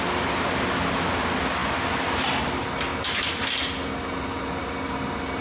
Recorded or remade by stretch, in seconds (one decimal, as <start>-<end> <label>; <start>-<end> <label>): 0.0-5.4 recorded